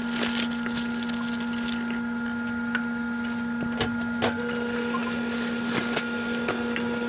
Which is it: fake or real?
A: real